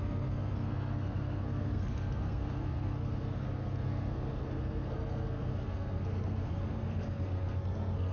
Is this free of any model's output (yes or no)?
no